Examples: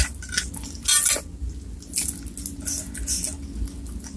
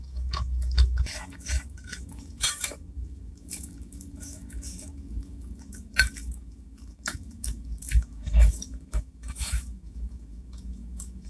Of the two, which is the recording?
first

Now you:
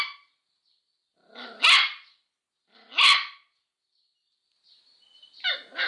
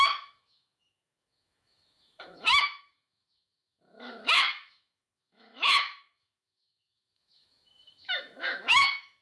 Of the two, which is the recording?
first